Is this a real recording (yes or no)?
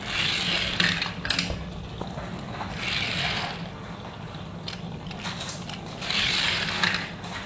yes